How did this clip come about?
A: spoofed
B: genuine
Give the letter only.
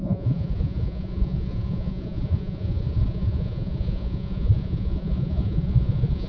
A